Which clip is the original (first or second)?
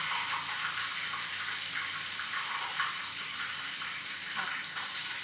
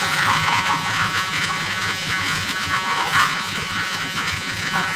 first